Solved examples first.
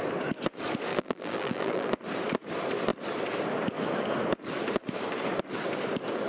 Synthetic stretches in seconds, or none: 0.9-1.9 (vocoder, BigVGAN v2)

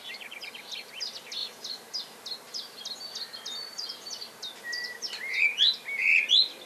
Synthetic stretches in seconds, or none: none

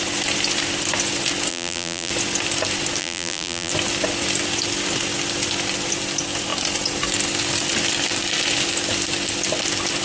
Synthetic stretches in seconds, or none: 1.5-2.1 (vocoder, BigVGAN v2); 3.0-3.7